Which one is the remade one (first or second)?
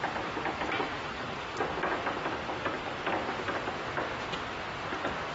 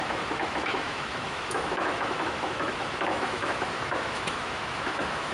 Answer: second